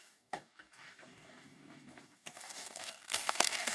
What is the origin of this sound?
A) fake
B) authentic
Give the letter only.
A